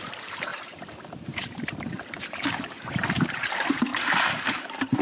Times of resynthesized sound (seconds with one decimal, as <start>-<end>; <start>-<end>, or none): 0.0-5.0